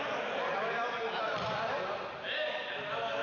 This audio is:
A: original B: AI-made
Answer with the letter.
A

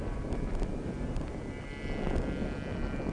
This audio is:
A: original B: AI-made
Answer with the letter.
A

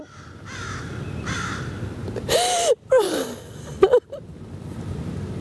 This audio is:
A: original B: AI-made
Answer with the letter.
A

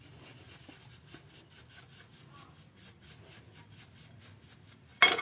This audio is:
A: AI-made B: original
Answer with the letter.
B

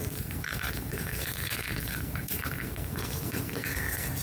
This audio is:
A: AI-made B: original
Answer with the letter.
A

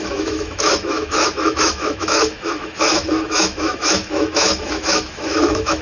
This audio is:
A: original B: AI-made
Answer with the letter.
B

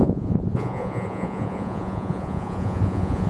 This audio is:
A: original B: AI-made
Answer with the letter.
B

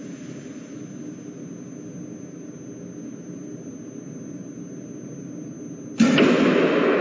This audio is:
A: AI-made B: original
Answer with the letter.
B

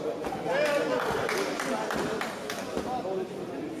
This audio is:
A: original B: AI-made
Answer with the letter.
A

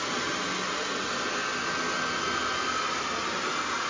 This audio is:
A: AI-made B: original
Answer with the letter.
B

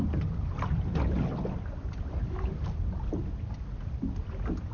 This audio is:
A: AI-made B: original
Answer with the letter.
B